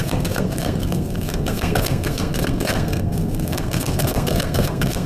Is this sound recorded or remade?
remade